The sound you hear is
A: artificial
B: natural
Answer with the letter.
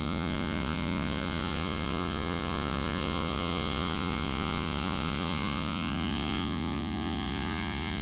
A